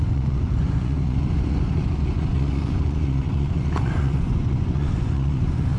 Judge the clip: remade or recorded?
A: remade